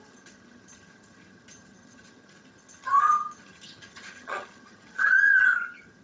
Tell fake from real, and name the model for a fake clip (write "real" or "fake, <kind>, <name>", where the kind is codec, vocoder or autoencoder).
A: fake, vocoder, HiFi-GAN